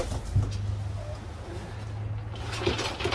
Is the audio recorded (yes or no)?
yes